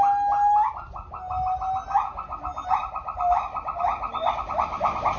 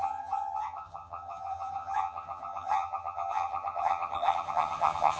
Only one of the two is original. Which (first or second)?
first